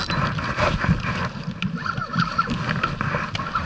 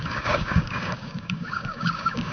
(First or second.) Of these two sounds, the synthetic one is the second